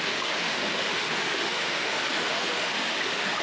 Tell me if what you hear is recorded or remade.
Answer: remade